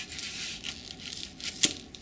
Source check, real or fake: real